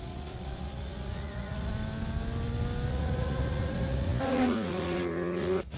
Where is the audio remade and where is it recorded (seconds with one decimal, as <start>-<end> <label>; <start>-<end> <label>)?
0.0-1.7 remade; 1.7-2.9 recorded; 2.9-5.8 remade